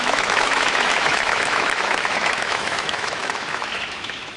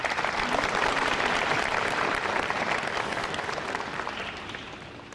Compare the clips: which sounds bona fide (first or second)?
second